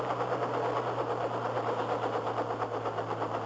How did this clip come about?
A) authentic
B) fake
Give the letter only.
A